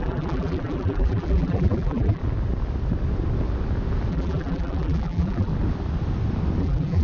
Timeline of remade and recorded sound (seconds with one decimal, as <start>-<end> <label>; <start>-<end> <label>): 0.0-2.2 remade; 2.2-4.1 recorded; 4.1-5.5 remade; 5.5-6.6 recorded; 6.6-7.0 remade